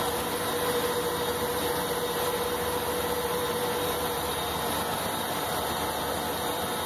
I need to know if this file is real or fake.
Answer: real